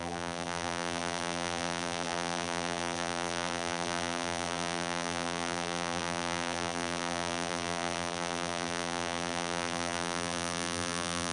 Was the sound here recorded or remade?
remade